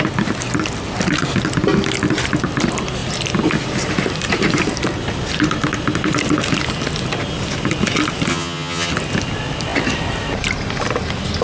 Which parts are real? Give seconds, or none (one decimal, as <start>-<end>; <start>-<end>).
0.0-8.3; 8.9-11.4